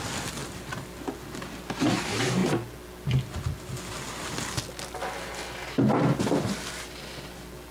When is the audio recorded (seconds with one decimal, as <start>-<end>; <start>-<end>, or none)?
0.0-7.7